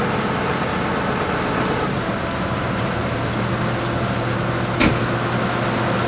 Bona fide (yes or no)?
yes